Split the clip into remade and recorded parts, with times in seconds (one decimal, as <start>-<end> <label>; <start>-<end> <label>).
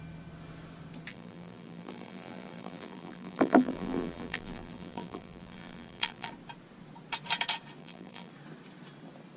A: 0.0-1.1 recorded; 1.1-6.3 remade; 6.3-7.8 recorded; 7.8-8.3 remade; 8.3-9.4 recorded